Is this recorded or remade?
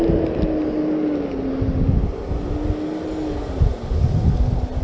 recorded